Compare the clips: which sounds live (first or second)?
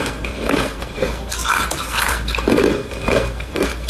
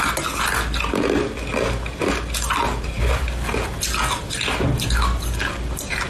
second